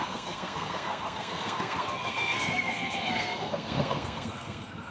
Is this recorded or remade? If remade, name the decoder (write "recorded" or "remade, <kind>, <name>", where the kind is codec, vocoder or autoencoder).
remade, codec, SNAC